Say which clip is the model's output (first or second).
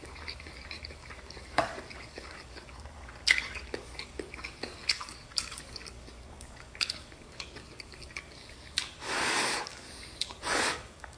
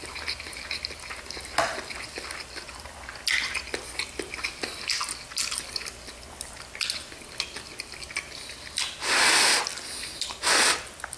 first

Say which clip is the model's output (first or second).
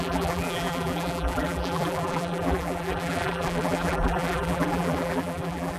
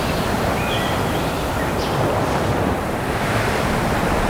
first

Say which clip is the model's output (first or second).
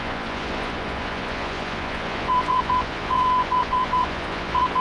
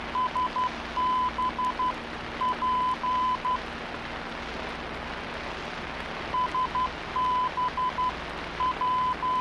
first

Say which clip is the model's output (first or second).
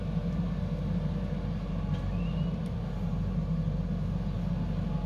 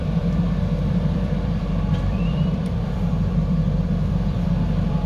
second